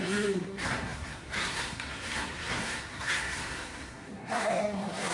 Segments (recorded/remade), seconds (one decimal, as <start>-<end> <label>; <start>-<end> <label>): 0.0-5.1 remade